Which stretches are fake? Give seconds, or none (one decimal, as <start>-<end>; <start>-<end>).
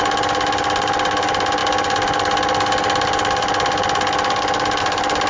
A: none